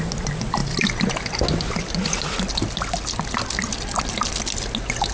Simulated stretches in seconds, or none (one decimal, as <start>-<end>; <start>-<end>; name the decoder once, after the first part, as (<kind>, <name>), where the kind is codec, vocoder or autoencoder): none